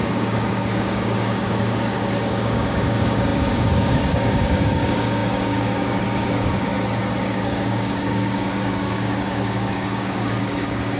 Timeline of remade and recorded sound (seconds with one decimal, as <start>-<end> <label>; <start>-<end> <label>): 0.0-6.7 remade; 6.7-7.2 recorded; 7.2-11.0 remade